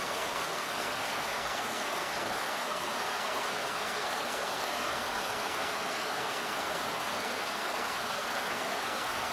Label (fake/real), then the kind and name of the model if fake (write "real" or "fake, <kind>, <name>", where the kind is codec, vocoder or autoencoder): fake, codec, SNAC